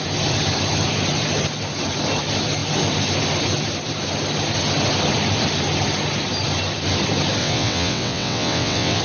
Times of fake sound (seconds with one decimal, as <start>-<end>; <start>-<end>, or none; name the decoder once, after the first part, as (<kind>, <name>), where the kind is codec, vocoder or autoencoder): 7.4-9.0 (vocoder, WaveNeXt)